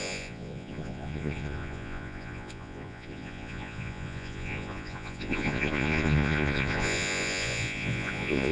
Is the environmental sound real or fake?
fake